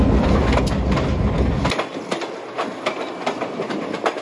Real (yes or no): yes